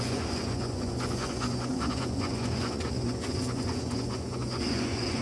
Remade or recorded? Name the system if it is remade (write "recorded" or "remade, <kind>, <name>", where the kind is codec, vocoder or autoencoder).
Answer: remade, vocoder, Vocos